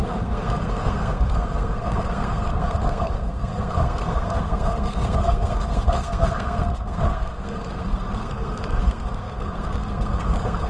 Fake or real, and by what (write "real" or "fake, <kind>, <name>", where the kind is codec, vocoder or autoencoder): fake, codec, SNAC